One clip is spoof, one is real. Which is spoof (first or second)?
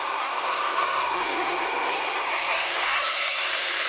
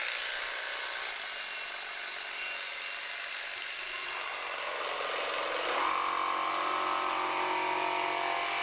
first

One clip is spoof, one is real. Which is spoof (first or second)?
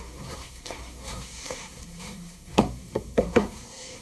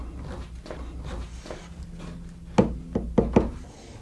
first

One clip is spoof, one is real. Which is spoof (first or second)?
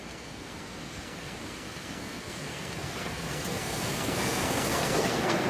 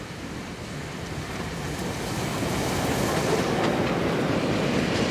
first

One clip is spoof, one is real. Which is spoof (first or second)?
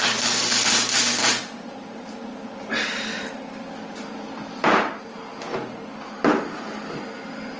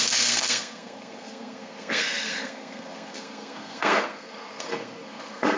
second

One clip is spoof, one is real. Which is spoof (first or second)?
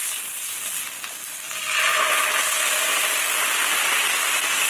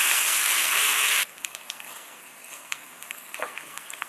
second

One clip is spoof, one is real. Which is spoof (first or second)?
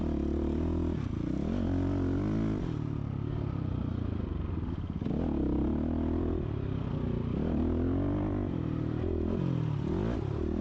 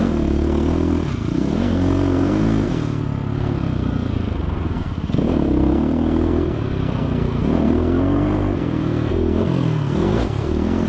second